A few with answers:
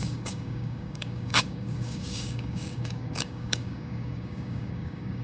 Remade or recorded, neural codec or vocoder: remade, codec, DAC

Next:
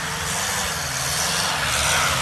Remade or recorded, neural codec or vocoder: recorded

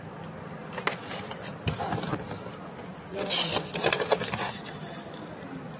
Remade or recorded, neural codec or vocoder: remade, vocoder, BigVGAN v2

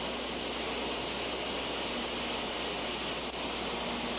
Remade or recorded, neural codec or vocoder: recorded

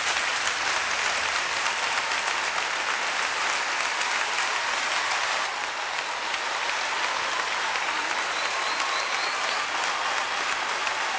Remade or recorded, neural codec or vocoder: recorded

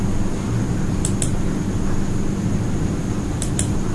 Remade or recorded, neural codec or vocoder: recorded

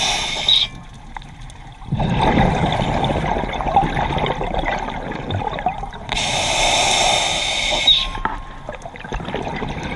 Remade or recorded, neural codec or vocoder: recorded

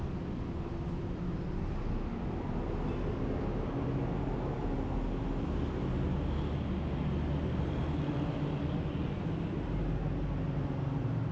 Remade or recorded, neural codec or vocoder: recorded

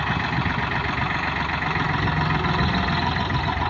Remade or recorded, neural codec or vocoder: recorded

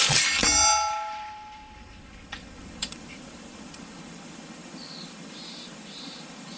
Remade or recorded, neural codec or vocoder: remade, vocoder, BigVGAN v2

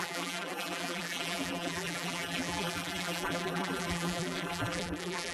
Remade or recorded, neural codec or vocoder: remade, vocoder, BigVGAN v2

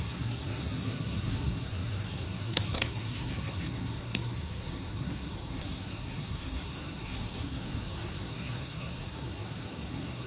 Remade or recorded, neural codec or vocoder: remade, codec, SNAC